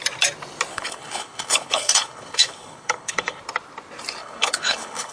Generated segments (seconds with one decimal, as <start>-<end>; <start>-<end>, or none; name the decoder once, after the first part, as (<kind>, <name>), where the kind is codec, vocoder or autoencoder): 0.7-3.4 (codec, HILCodec); 4.2-5.1